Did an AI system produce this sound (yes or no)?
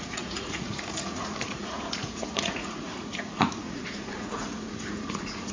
yes